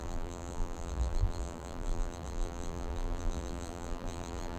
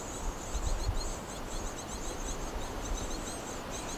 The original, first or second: second